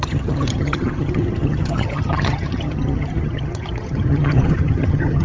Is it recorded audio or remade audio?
remade